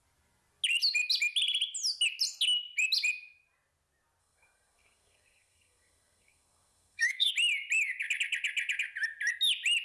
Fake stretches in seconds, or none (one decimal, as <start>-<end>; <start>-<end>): 4.2-7.3